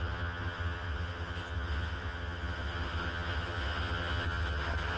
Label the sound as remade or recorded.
remade